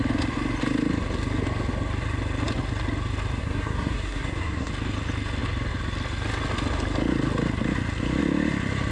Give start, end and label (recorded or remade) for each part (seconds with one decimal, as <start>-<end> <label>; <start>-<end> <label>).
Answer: 0.0-3.4 recorded; 3.4-4.7 remade; 4.7-8.9 recorded